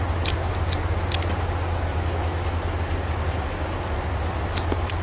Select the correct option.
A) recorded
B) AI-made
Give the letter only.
A